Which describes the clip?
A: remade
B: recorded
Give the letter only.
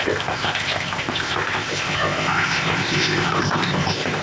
A